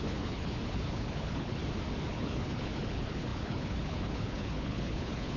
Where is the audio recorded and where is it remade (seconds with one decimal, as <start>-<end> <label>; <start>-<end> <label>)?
0.0-1.6 remade; 1.6-2.1 recorded; 2.1-5.4 remade

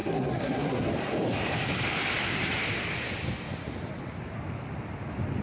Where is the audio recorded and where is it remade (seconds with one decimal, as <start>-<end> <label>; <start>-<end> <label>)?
0.0-0.9 remade; 0.9-5.4 recorded

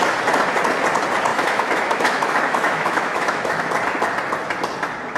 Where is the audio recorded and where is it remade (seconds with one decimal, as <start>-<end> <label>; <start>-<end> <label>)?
0.0-1.3 recorded; 1.3-3.7 remade; 3.7-5.2 recorded

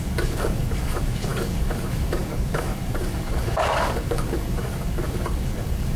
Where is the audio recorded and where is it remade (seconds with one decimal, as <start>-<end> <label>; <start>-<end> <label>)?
0.0-6.0 remade